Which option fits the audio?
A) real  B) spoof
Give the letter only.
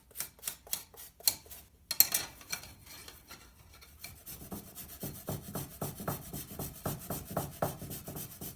A